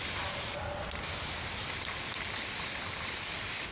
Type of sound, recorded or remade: recorded